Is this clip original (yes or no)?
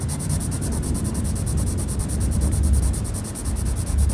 yes